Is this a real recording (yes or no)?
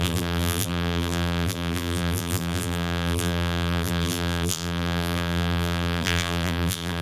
no